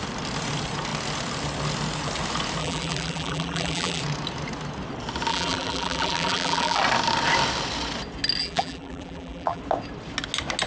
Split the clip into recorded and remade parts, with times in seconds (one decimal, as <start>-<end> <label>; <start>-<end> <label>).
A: 0.0-2.6 recorded; 2.6-4.0 remade; 4.0-5.3 recorded; 5.3-6.8 remade; 6.8-8.4 recorded; 8.4-9.6 remade; 9.6-10.7 recorded